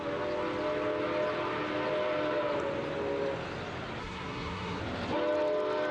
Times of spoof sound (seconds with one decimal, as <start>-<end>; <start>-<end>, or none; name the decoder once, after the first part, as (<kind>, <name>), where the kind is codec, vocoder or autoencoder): 4.0-4.8 (codec, SNAC)